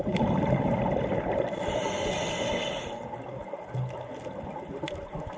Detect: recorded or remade recorded